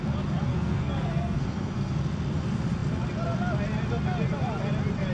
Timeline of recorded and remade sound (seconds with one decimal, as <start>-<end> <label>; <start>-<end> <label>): 0.0-0.5 recorded; 0.5-2.0 remade; 2.0-5.1 recorded